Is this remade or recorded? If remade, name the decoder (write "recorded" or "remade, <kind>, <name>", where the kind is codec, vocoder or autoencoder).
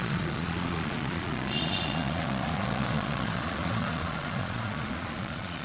remade, vocoder, Vocos